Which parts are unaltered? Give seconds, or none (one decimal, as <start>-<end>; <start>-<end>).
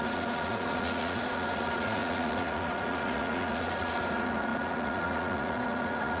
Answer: none